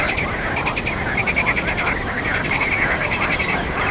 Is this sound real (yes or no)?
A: yes